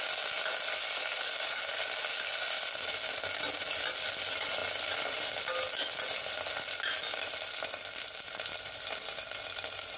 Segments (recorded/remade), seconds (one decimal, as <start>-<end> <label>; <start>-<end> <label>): 0.0-10.0 recorded